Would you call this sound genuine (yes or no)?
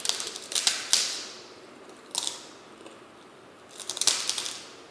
yes